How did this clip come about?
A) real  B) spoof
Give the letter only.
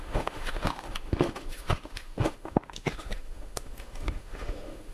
B